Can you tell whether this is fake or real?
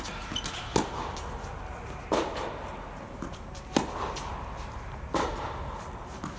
real